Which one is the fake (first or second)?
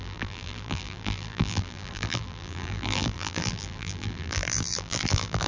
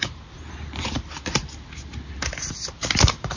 first